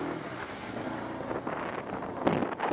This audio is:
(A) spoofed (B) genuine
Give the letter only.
B